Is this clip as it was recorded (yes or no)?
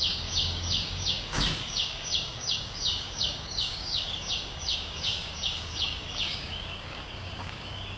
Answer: no